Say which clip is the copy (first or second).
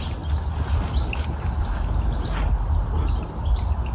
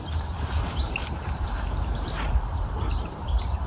second